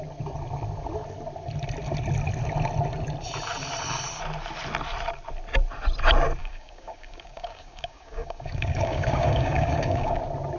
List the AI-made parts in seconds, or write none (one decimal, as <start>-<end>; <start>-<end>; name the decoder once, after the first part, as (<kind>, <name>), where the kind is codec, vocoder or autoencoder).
6.4-10.2 (codec, DAC)